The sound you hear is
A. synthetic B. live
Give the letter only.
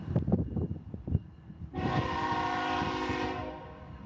A